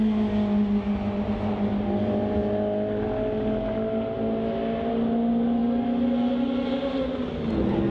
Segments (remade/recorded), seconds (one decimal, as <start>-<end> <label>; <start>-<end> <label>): 0.0-7.9 recorded